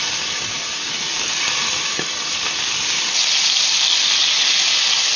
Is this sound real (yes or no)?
yes